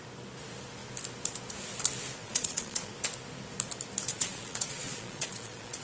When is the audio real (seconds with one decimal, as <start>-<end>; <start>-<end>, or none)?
0.0-2.2; 2.9-4.1